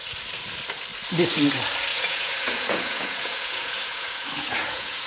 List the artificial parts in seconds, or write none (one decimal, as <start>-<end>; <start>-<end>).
1.9-5.1